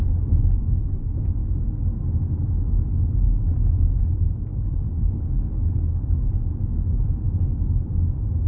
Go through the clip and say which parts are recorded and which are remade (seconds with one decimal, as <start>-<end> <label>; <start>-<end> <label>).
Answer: 0.0-4.5 recorded; 4.5-6.2 remade; 6.2-8.5 recorded